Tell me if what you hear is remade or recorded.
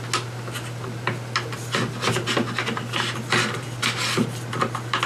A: recorded